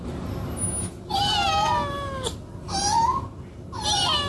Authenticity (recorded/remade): recorded